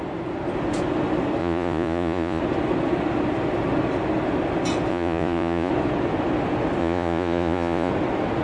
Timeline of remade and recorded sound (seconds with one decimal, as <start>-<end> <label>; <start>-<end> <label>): 0.0-1.4 recorded; 1.4-2.4 remade; 2.4-4.9 recorded; 4.9-5.7 remade; 5.7-6.8 recorded; 6.8-7.9 remade; 7.9-8.4 recorded